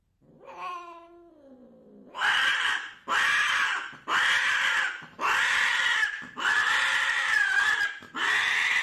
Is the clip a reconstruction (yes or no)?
no